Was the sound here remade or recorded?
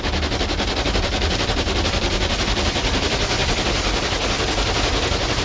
recorded